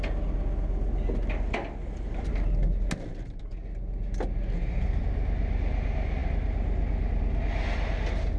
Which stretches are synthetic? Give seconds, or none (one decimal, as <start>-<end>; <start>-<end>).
1.8-2.3

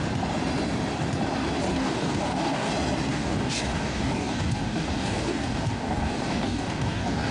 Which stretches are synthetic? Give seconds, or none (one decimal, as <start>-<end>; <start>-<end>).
1.7-2.7; 3.1-7.3